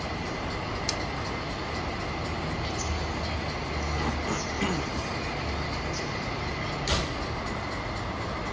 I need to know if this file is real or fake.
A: real